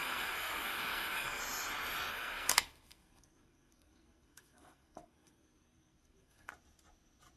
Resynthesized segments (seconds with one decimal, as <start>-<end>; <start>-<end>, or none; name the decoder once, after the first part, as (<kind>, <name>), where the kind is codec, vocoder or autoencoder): 0.0-1.4 (codec, SNAC); 2.1-6.5